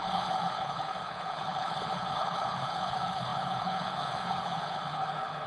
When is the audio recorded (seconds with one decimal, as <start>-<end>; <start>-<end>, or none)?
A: none